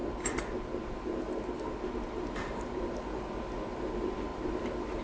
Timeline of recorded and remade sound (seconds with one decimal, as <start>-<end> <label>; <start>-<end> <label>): 0.0-3.0 remade; 3.0-5.0 recorded